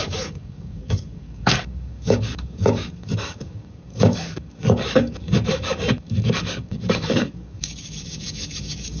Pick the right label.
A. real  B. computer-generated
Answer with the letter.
B